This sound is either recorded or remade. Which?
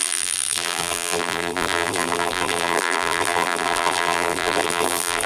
remade